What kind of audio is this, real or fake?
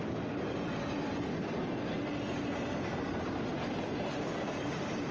real